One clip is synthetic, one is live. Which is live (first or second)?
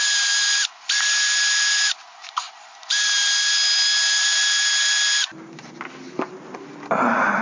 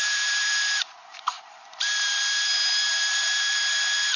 first